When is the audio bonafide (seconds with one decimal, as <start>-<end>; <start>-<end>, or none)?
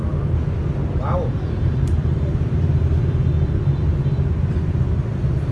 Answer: 0.0-5.5